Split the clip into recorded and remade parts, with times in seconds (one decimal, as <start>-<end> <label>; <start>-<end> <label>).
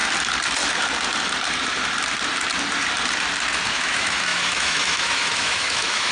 0.0-3.7 recorded; 3.7-6.1 remade